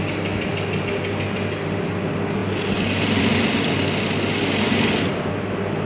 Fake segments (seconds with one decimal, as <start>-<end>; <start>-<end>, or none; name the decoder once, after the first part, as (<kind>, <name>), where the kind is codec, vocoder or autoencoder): none